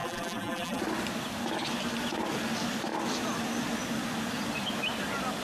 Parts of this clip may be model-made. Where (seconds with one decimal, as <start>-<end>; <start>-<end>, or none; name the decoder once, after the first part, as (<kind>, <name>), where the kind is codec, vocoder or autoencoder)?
0.0-0.8 (vocoder, BigVGAN v2)